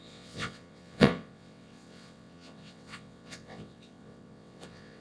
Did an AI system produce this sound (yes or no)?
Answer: yes